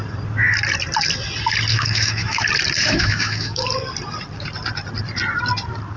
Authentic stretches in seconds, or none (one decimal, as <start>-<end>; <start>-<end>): 0.0-1.7; 2.4-2.8; 3.6-6.0